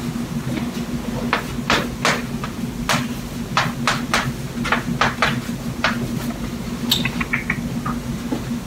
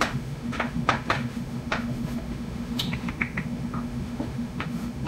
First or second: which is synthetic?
second